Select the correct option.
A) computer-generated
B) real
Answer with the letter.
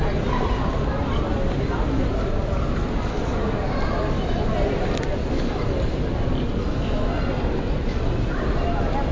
B